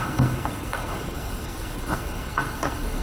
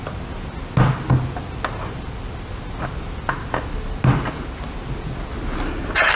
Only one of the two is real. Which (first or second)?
second